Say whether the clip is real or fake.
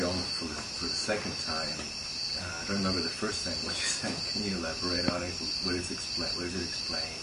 fake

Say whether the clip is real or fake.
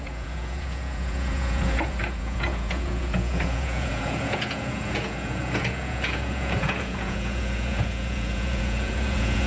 fake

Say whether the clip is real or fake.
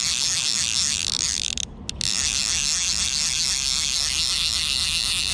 real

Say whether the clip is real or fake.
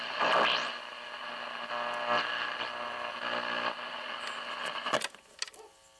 real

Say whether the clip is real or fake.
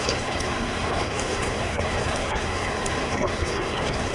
fake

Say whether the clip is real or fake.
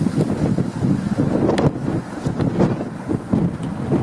real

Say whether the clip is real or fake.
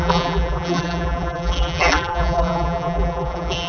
fake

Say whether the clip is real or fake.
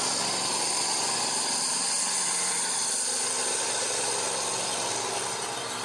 real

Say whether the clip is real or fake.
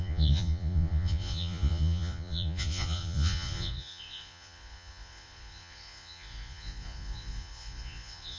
fake